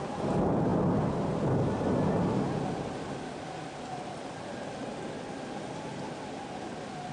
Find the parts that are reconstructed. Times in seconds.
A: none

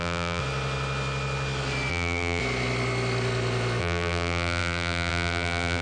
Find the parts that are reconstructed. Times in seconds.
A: 0.0-0.4 (vocoder, BigVGAN v2); 1.9-2.4; 3.8-5.8

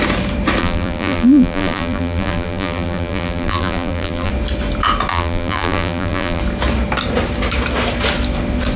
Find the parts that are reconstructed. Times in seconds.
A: 0.6-4.3 (vocoder, BigVGAN v2); 5.1-6.4